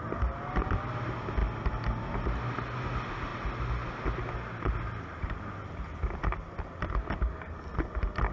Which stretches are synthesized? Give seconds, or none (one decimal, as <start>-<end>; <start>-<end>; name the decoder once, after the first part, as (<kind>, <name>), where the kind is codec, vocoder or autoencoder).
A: none